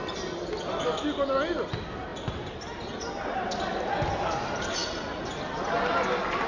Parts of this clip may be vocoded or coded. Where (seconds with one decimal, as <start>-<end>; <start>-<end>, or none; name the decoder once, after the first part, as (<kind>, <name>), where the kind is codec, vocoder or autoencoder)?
none